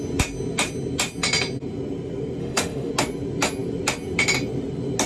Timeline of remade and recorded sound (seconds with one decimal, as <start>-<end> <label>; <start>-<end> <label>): 0.0-2.4 recorded; 2.4-2.9 remade; 2.9-5.1 recorded